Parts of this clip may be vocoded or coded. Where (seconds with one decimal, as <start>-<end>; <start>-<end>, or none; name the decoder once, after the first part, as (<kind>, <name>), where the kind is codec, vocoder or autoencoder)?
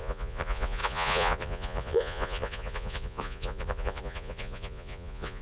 0.0-5.4 (vocoder, Vocos)